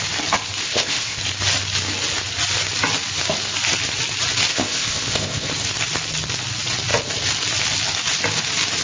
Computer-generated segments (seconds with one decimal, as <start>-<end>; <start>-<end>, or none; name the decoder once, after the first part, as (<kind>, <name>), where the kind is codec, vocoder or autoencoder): 0.6-1.2 (codec, ZipCodec); 4.5-5.5